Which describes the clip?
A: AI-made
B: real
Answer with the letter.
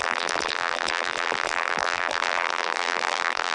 A